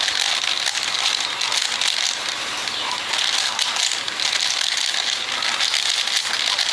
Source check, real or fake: real